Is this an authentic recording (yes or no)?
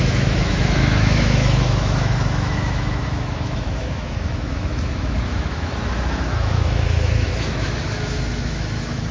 no